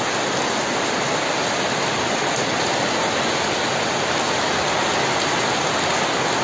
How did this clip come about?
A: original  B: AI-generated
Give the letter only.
A